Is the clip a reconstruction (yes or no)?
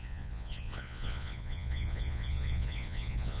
yes